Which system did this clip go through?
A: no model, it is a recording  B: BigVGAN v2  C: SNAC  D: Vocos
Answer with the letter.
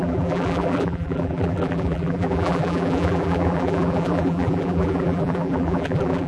B